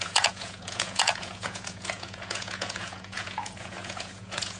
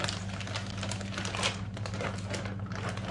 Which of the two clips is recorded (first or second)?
second